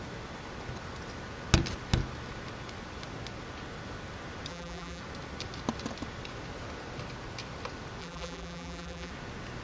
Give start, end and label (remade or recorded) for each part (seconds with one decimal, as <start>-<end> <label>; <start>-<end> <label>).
0.0-4.5 recorded; 4.5-5.0 remade; 5.0-8.0 recorded; 8.0-9.1 remade; 9.1-9.6 recorded